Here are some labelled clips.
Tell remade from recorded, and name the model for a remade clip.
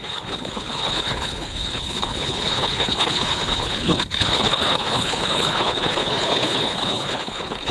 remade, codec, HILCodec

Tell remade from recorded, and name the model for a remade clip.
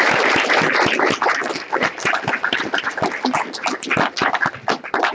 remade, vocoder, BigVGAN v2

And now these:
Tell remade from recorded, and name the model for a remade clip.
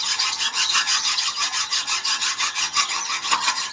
remade, vocoder, HiFi-GAN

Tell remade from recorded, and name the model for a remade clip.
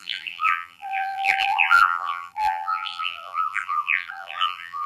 remade, vocoder, BigVGAN v2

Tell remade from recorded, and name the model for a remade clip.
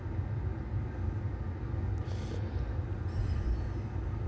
recorded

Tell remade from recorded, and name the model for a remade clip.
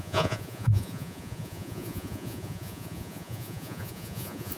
remade, vocoder, Vocos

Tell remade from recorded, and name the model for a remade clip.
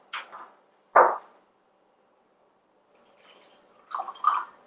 recorded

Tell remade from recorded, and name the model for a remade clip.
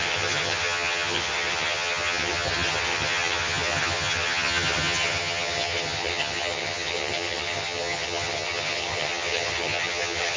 remade, vocoder, HiFi-GAN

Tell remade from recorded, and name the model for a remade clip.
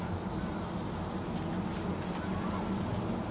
recorded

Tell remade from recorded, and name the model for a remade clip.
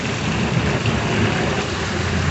recorded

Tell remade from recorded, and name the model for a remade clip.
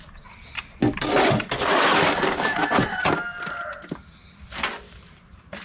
recorded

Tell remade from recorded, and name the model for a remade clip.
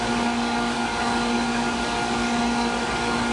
remade, codec, DAC